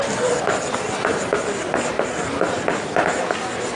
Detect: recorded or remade recorded